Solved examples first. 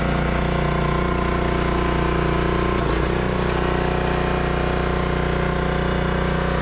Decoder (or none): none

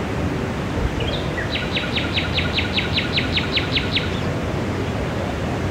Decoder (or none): none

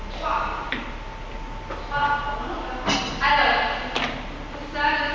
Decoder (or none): none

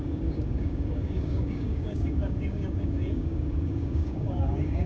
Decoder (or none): codec, DAC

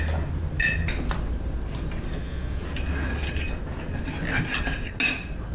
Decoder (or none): none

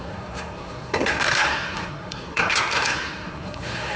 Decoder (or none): codec, SNAC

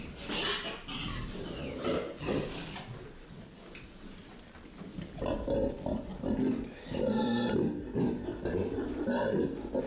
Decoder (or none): none